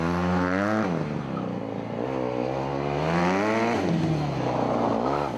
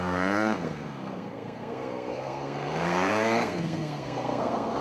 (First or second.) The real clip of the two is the first